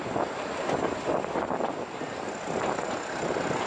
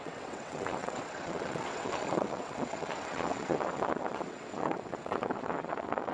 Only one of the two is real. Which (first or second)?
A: first